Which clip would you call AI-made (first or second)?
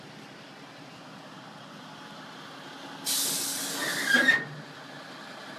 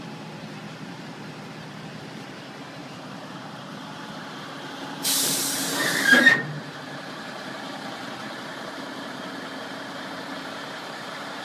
second